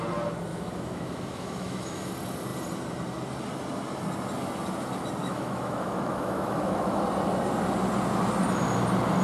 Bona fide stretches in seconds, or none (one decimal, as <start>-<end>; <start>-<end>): 0.0-0.5; 2.1-5.2; 7.0-9.2